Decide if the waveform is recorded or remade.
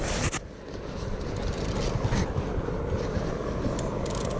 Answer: recorded